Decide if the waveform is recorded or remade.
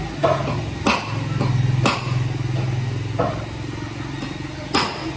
recorded